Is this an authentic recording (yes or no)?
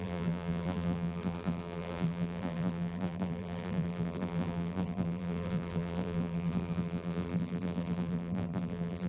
no